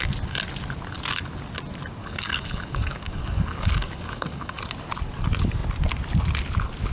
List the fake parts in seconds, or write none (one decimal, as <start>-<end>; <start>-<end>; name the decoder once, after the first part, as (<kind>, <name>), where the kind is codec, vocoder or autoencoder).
2.0-4.6 (codec, DAC)